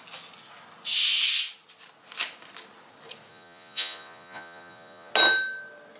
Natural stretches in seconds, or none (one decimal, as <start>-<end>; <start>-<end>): 0.0-3.3; 5.1-6.0